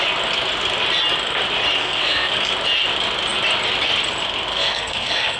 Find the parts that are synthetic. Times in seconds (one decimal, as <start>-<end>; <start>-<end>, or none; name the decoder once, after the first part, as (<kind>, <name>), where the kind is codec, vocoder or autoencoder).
1.8-2.3 (codec, SNAC); 4.5-5.4